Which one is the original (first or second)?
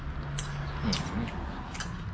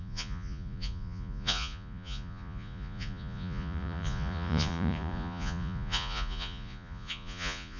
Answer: first